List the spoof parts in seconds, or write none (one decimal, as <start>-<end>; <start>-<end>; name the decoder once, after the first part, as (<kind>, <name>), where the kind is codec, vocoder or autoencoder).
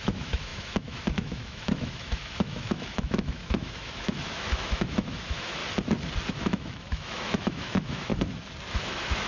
0.0-5.6 (autoencoder, DAC-VAE); 6.3-8.1; 8.7-9.3